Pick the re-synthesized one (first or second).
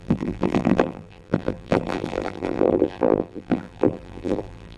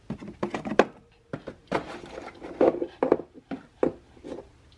first